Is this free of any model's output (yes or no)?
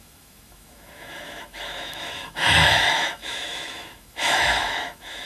no